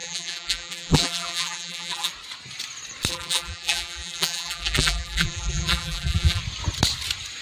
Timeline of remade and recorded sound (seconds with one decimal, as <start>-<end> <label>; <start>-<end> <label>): 0.0-2.1 remade; 2.1-3.1 recorded; 3.1-6.4 remade; 6.4-7.4 recorded